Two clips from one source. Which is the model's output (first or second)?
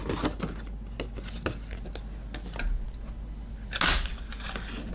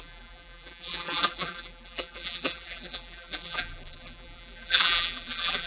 second